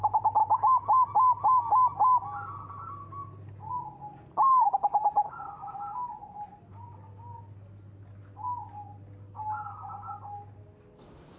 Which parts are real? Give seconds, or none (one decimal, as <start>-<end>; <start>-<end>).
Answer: 0.0-11.4